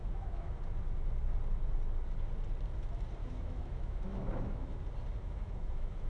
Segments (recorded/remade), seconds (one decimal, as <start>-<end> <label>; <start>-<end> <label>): 0.0-0.6 remade; 0.6-3.2 recorded; 3.2-4.8 remade; 4.8-5.2 recorded; 5.2-6.1 remade